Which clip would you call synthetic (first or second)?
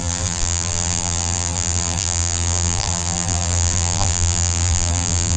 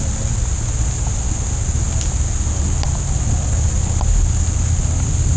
first